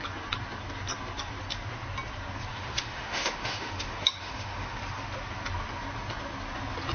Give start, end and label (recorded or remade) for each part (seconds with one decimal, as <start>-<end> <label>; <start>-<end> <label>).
0.0-2.5 recorded; 2.5-4.8 remade; 4.8-6.9 recorded